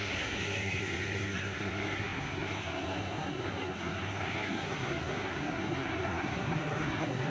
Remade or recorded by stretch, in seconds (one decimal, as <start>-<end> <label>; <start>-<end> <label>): 0.0-7.3 remade